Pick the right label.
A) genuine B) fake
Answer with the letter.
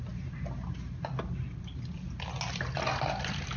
A